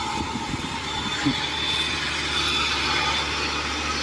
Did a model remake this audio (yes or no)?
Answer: no